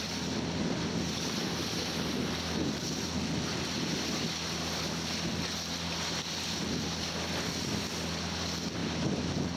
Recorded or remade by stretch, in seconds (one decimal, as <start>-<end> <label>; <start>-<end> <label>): 0.0-9.6 recorded